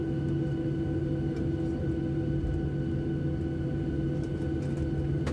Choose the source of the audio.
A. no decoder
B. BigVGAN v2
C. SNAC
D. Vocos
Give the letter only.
A